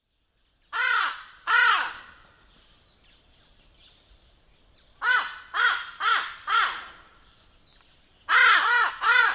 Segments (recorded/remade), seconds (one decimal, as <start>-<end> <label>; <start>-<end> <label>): 0.0-9.3 recorded